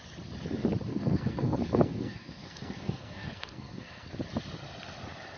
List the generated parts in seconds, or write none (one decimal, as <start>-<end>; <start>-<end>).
0.9-4.1